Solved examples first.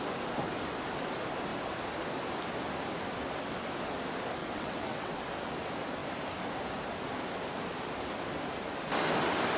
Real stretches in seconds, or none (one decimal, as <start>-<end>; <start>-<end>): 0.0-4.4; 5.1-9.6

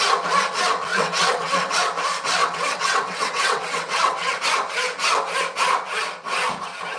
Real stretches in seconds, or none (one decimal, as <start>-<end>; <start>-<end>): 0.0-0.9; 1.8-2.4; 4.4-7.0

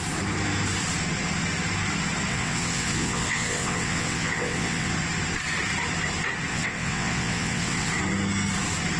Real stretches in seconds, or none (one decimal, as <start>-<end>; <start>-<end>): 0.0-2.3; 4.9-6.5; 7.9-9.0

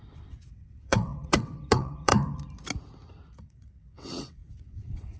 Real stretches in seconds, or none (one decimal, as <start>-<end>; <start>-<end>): 2.1-3.4

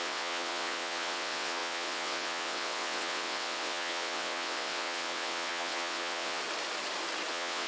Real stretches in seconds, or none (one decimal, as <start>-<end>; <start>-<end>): 6.4-7.3

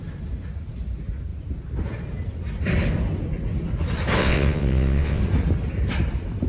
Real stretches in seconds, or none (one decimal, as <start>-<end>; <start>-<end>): 0.0-4.2; 5.2-6.5